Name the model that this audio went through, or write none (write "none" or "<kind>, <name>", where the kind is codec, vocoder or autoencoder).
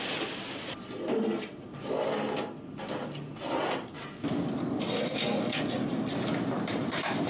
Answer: none